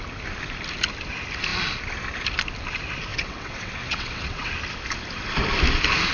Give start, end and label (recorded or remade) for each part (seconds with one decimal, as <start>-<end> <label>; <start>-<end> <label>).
0.0-3.1 recorded; 3.1-4.5 remade; 4.5-6.1 recorded